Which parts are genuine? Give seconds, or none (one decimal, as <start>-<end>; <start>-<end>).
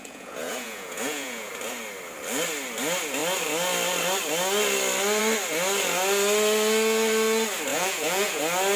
1.5-7.7; 8.4-8.8